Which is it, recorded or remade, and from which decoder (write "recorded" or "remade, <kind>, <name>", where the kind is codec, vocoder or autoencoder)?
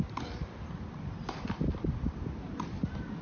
recorded